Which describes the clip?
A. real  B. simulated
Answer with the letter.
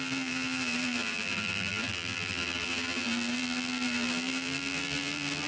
B